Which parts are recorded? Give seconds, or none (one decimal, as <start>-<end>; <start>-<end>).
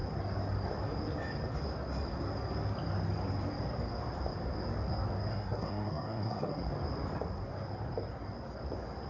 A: 0.0-5.3; 6.7-9.1